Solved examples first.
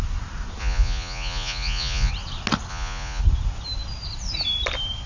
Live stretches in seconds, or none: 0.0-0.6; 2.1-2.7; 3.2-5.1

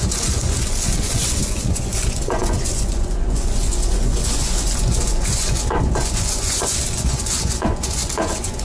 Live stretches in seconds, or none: none

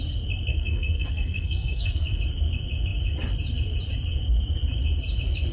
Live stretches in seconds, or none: 0.0-0.5; 2.2-5.5